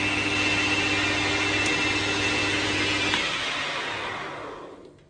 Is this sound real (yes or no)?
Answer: yes